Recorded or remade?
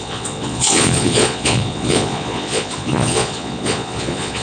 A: remade